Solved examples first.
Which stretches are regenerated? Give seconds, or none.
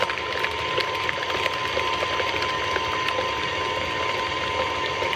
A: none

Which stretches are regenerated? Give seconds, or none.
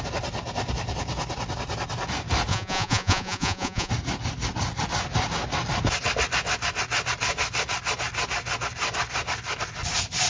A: 2.5-3.9 (vocoder, Vocos)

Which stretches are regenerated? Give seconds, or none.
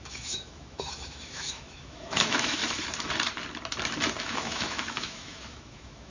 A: 0.0-2.6 (autoencoder, DAC-VAE); 4.2-6.1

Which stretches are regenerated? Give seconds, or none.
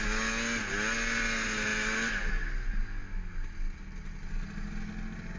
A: none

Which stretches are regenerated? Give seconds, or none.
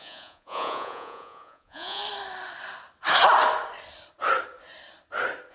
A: 0.0-2.0 (vocoder, Vocos)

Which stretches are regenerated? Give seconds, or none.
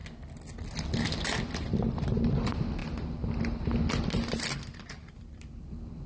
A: 1.7-6.1 (vocoder, BigVGAN v2)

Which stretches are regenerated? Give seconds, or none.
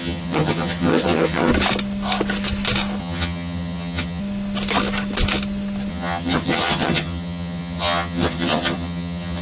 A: 0.0-1.5 (vocoder, HiFi-GAN); 3.0-4.2; 5.9-9.4